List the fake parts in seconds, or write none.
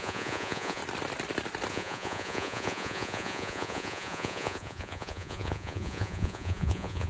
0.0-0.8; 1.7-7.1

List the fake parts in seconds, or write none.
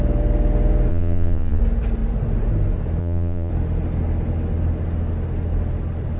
0.9-1.6; 3.0-3.5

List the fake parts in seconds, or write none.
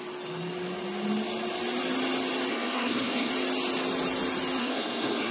2.5-3.3; 4.6-5.3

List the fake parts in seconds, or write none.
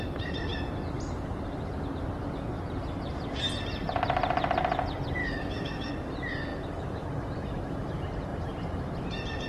5.2-5.9